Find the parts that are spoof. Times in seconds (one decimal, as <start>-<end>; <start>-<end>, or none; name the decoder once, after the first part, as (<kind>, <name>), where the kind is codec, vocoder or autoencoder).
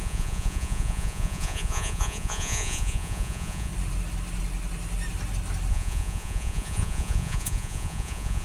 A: 0.0-3.7 (vocoder, Vocos); 5.7-8.4